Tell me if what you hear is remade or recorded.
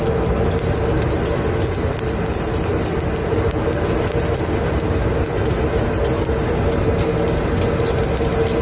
recorded